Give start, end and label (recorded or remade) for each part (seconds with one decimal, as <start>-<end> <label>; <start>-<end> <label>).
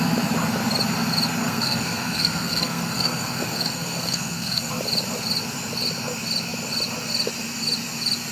0.0-1.4 recorded; 1.4-4.7 remade; 4.7-8.3 recorded